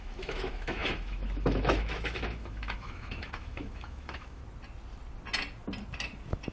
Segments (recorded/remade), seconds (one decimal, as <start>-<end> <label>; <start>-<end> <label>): 0.0-4.4 remade; 4.4-6.5 recorded